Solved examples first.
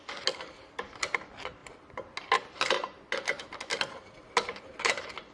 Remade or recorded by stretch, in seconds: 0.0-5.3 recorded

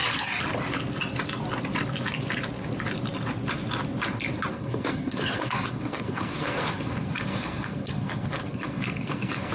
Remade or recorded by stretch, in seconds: 0.0-4.5 recorded; 4.5-9.5 remade